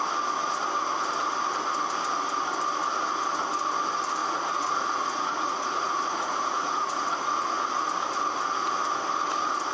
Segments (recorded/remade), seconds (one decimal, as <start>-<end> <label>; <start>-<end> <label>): 0.0-4.2 recorded; 4.2-7.8 remade; 7.8-9.7 recorded